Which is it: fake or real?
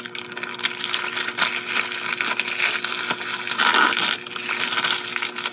real